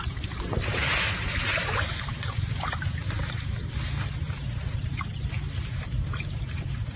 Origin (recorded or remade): remade